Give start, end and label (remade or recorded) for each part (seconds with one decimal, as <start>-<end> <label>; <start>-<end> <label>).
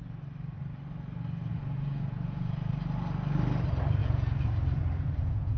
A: 0.0-1.5 recorded; 1.5-2.7 remade; 2.7-4.0 recorded; 4.0-5.6 remade